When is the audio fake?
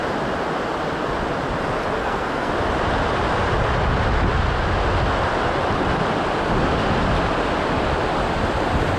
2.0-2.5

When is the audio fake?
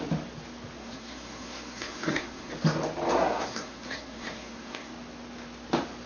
0.8-2.5; 3.1-4.9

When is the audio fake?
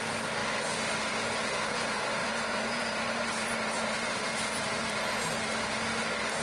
2.2-5.2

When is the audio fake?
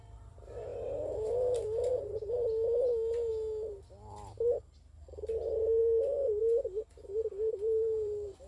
0.0-3.3; 5.8-6.4; 7.5-8.5